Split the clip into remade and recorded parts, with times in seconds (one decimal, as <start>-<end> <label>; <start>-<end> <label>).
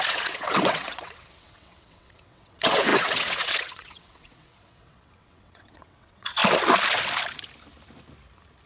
0.0-6.4 remade; 6.4-8.7 recorded